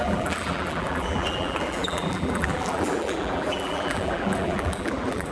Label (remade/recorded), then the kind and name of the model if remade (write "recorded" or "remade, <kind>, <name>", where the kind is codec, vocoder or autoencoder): remade, vocoder, BigVGAN v2